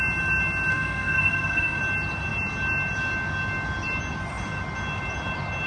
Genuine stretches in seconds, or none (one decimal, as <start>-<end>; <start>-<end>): 0.0-0.7; 1.8-5.7